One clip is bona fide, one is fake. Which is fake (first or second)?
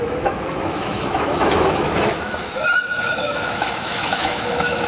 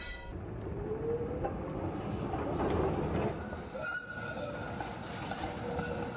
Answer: first